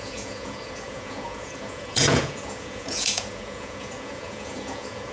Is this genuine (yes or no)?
no